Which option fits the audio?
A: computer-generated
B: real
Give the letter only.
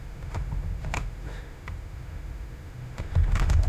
A